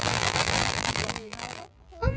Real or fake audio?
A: fake